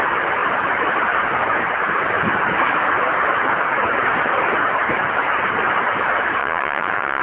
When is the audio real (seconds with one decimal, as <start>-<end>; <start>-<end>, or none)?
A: 0.0-6.4